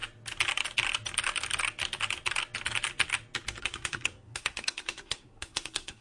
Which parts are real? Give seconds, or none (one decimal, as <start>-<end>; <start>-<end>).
0.0-3.6